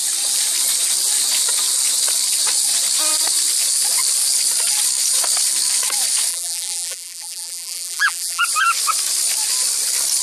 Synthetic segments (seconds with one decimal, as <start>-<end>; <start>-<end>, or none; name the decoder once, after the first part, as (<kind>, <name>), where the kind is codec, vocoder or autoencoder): 6.3-8.4 (vocoder, BigVGAN v2)